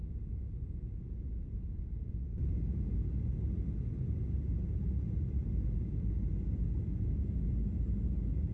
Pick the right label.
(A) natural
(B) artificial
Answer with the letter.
A